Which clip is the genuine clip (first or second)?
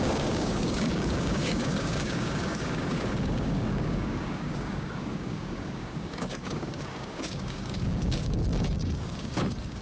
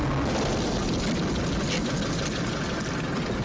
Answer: second